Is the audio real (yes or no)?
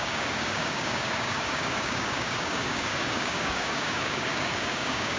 no